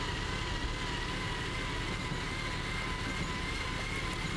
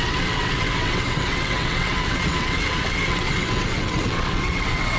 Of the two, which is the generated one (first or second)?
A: second